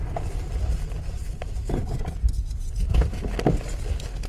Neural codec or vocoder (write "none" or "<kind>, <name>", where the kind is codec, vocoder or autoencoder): none